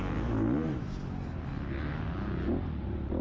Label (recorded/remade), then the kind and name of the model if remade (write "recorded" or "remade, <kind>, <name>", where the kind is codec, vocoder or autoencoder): recorded